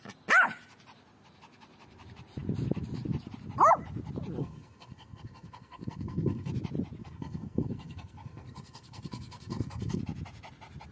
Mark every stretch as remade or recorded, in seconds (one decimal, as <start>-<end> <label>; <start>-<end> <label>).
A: 0.0-4.4 recorded; 4.4-6.5 remade; 6.5-7.0 recorded; 7.0-10.0 remade; 10.0-10.9 recorded